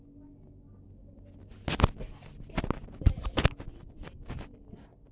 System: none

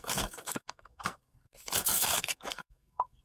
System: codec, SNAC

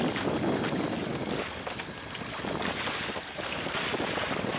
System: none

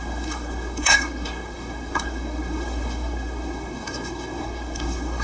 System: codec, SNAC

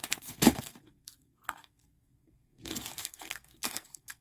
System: codec, SNAC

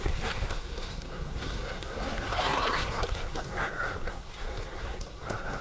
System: codec, SNAC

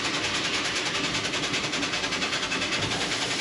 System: none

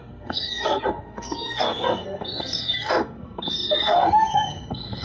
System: codec, SNAC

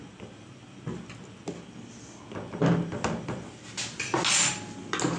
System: none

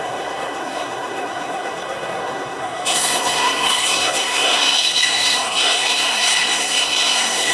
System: codec, SNAC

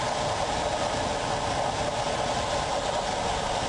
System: none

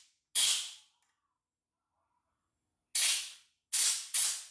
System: none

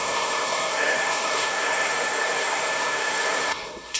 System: codec, SNAC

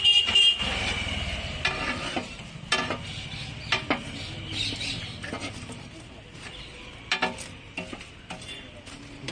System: none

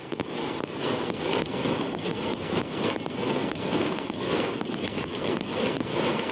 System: codec, SNAC